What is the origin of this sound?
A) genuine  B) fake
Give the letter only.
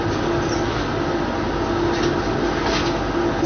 A